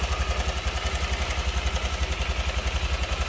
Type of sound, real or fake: real